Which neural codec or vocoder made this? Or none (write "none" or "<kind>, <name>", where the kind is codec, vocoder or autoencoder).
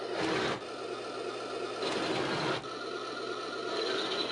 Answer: none